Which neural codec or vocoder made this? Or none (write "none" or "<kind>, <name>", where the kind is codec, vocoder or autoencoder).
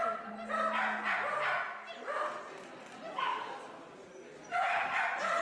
none